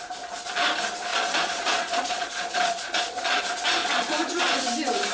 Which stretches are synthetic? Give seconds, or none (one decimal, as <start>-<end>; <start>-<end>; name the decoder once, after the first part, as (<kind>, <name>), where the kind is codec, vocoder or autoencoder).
1.1-3.4 (vocoder, Vocos); 3.8-4.6